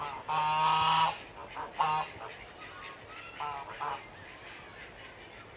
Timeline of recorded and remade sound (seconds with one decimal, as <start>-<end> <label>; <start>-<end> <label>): 0.0-5.6 recorded